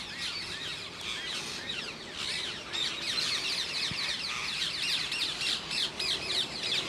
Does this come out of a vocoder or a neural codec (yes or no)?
yes